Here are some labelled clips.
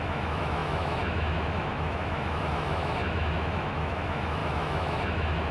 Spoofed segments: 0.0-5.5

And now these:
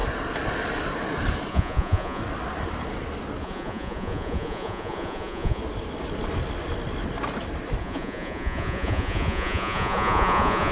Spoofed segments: 1.5-2.2; 3.4-5.6; 7.8-10.7

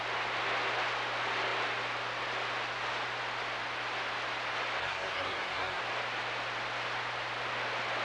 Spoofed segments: 4.8-5.8

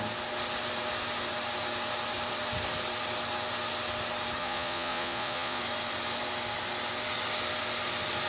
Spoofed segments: 4.4-5.6

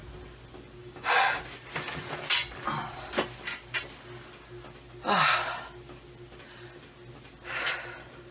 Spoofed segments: 0.8-1.4

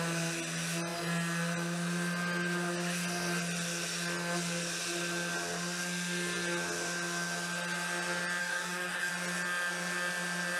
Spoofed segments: 8.4-9.1

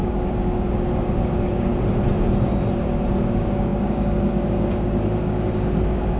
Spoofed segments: 0.0-1.7; 2.7-6.2